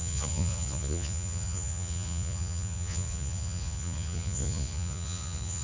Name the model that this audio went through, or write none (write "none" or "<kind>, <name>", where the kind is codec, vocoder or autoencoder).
vocoder, Vocos